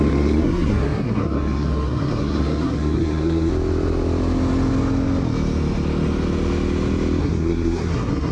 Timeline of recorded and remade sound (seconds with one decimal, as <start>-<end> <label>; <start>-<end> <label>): 0.0-3.5 remade; 3.5-7.2 recorded; 7.2-8.3 remade